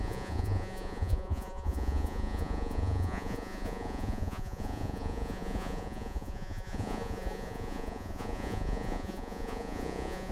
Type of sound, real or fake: fake